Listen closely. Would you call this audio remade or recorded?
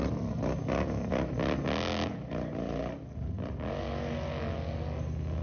recorded